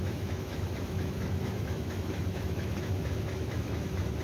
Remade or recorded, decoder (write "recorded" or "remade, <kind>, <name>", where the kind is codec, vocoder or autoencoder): remade, autoencoder, DAC-VAE